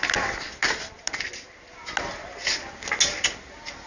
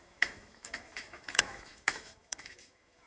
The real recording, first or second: first